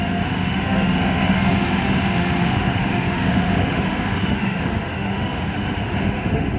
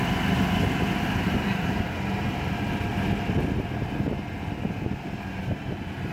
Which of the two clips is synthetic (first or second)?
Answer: first